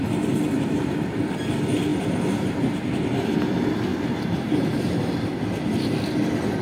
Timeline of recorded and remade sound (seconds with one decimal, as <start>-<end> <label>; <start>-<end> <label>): 0.0-3.9 recorded; 3.9-4.7 remade; 4.7-6.6 recorded